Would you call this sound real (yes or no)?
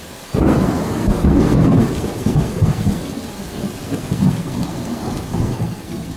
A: no